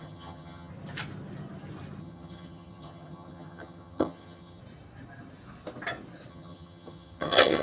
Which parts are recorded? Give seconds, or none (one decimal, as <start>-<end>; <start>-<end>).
0.7-2.0; 4.6-6.3